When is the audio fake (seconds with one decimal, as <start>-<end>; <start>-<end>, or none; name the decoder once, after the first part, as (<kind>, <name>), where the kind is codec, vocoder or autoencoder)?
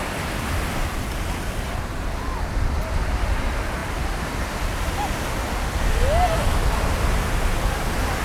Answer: none